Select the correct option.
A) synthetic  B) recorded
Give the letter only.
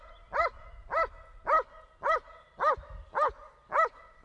B